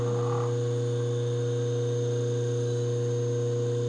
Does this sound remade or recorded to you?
recorded